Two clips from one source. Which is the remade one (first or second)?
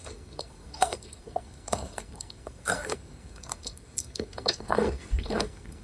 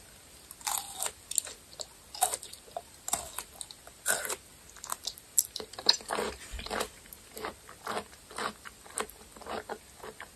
first